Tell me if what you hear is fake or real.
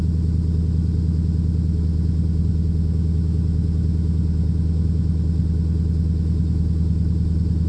real